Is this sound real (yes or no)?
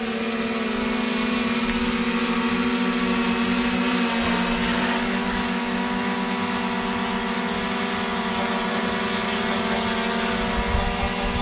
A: yes